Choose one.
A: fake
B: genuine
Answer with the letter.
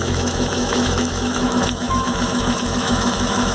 A